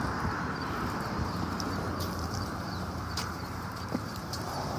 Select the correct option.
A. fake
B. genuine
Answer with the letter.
A